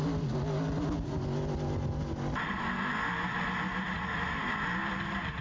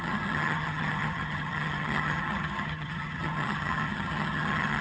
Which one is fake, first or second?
second